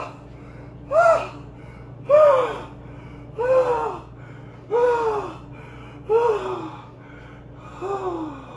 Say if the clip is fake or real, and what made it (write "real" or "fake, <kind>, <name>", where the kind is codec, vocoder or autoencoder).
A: real